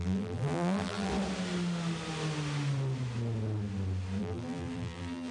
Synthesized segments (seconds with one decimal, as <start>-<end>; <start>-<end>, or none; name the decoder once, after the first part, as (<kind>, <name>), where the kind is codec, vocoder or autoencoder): 0.0-1.1 (vocoder, BigVGAN v2); 4.2-5.3